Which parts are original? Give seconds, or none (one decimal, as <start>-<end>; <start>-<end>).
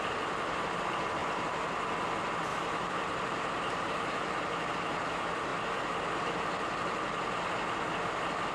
0.0-1.2; 1.7-2.5; 4.7-8.5